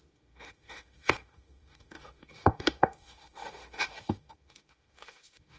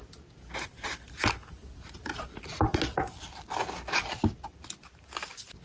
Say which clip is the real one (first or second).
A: second